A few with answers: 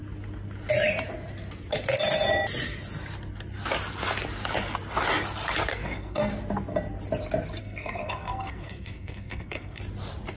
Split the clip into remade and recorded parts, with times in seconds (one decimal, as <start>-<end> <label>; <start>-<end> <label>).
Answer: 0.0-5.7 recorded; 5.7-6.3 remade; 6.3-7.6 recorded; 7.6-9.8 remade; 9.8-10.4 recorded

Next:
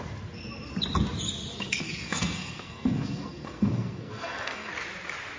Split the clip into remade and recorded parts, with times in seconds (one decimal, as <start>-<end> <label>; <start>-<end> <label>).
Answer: 0.0-1.5 recorded; 1.5-4.7 remade; 4.7-5.4 recorded

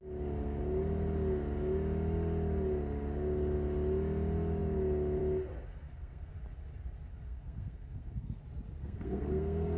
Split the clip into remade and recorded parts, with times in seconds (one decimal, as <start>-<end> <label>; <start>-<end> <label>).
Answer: 0.0-5.7 recorded; 5.7-6.3 remade; 6.3-7.1 recorded; 7.1-8.4 remade; 8.4-8.8 recorded; 8.8-9.8 remade